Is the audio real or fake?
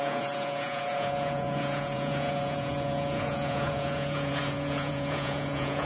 fake